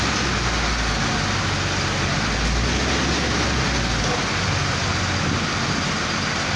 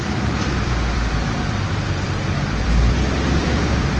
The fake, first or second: second